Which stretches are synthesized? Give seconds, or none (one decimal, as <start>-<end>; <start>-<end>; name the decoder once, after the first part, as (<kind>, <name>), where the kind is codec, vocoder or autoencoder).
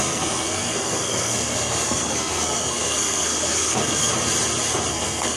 0.0-4.1 (codec, SNAC); 4.9-5.4